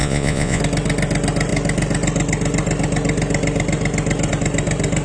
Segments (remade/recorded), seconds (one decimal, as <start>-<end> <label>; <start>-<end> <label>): 0.0-0.6 remade; 0.6-5.0 recorded